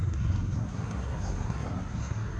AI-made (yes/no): yes